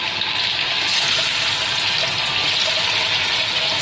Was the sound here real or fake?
real